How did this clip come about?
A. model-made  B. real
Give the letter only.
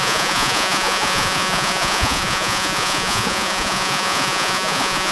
A